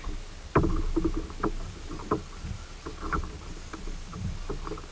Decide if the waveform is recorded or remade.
recorded